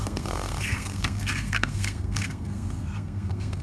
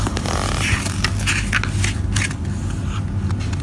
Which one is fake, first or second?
first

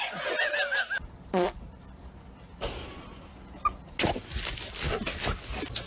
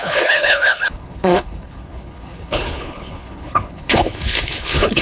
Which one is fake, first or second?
second